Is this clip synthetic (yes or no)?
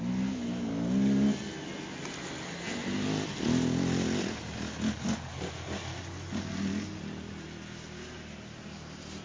no